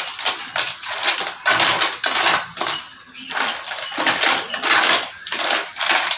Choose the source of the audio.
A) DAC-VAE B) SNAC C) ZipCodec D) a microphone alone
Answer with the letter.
D